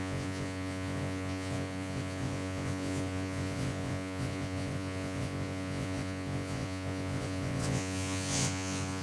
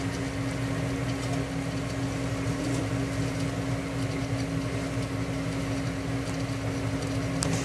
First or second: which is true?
second